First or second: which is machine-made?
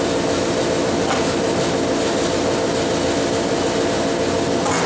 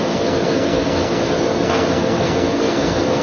second